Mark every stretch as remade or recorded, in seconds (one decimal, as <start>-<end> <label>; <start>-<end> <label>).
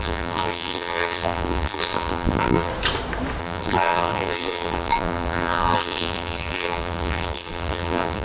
0.0-2.7 remade; 2.7-3.4 recorded; 3.4-8.2 remade